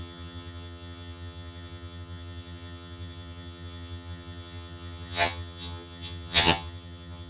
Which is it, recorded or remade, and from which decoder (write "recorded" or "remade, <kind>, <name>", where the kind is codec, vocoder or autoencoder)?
remade, vocoder, HiFi-GAN